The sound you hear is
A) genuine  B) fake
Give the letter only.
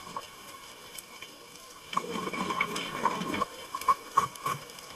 B